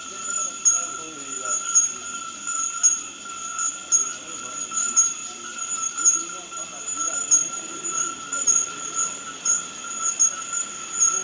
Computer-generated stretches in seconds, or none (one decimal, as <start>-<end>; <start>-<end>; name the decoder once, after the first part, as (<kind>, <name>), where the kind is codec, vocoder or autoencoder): 8.3-8.9 (vocoder, Vocos)